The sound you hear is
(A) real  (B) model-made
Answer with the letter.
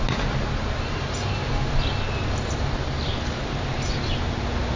A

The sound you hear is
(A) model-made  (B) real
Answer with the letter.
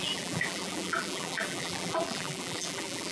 A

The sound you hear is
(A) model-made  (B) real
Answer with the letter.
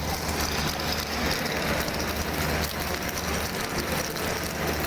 B